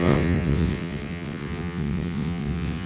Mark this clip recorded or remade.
remade